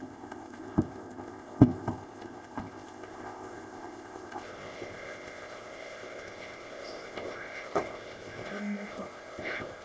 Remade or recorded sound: remade